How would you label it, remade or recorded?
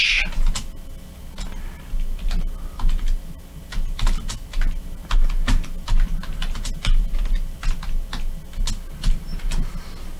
recorded